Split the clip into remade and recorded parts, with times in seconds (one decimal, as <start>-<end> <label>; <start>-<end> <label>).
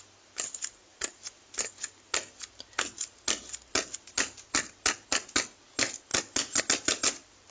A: 0.0-7.5 recorded